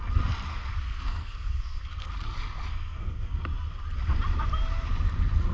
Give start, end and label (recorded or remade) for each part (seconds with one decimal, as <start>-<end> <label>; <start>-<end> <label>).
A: 0.0-0.5 recorded; 0.5-2.1 remade; 2.1-2.7 recorded; 2.7-3.4 remade; 3.4-5.5 recorded